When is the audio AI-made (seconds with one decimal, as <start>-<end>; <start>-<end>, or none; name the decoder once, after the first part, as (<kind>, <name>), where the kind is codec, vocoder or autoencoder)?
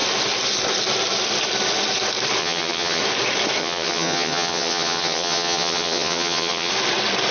2.4-3.0 (vocoder, HiFi-GAN); 3.6-6.7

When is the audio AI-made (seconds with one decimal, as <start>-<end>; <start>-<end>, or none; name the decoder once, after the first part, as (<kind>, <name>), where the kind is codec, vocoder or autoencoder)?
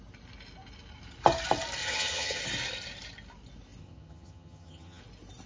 1.8-2.4 (vocoder, HiFi-GAN); 3.8-5.0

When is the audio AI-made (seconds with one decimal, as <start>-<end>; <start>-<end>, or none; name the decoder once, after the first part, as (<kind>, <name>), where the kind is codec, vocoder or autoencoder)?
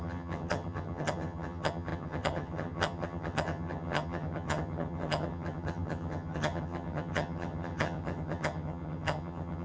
0.0-9.6 (vocoder, HiFi-GAN)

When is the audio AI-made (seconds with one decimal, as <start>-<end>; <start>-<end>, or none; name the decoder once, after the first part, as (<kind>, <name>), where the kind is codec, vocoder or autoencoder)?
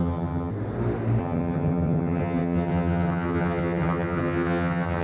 0.0-0.5 (vocoder, HiFi-GAN); 1.2-5.0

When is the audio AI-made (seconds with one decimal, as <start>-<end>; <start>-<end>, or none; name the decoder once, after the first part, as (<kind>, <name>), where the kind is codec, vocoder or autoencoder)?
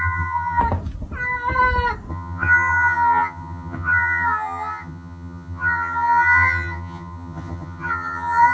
0.0-0.6 (vocoder, HiFi-GAN); 2.1-8.5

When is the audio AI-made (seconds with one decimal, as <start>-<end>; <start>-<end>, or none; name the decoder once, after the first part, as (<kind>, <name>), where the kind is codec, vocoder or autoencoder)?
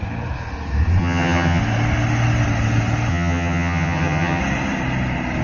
1.0-1.6 (vocoder, HiFi-GAN); 3.1-4.4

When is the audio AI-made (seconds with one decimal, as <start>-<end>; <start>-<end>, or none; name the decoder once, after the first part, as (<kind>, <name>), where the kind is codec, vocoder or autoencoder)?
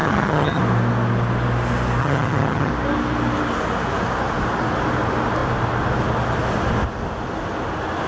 0.0-0.6 (vocoder, HiFi-GAN); 2.0-2.7